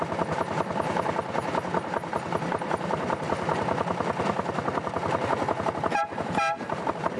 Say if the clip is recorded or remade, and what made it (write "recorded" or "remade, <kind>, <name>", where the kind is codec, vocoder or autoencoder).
recorded